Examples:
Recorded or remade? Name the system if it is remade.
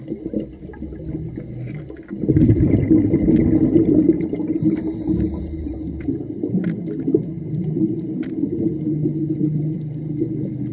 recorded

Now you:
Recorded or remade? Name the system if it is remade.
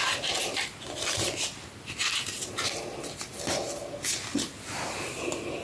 recorded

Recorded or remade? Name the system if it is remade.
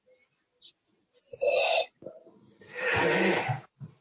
recorded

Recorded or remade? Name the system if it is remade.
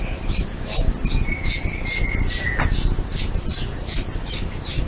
recorded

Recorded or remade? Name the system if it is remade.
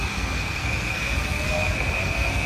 remade, codec, SNAC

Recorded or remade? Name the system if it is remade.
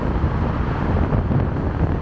recorded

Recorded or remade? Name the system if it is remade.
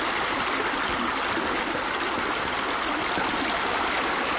recorded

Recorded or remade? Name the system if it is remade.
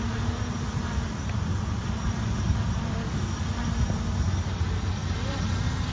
recorded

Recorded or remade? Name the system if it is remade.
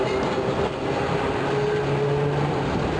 recorded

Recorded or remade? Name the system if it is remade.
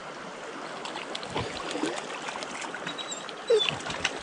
recorded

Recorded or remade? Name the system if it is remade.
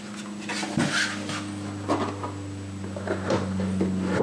recorded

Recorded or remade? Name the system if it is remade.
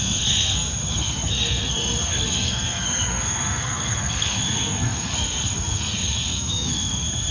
remade, codec, SNAC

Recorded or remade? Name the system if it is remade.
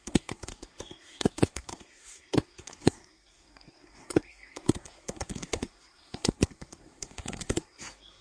remade, codec, SNAC